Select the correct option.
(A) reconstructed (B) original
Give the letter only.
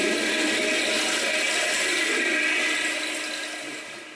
B